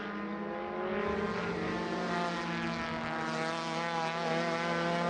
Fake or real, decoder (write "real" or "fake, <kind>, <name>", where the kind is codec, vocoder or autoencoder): real